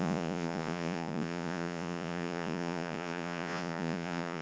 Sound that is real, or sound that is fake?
fake